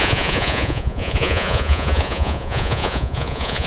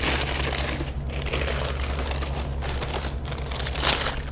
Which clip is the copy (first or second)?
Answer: first